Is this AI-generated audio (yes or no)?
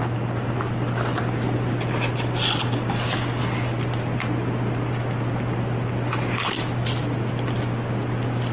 no